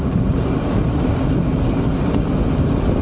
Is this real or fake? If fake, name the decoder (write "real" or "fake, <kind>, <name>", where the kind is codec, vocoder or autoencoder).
real